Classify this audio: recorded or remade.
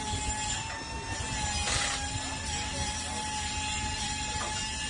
recorded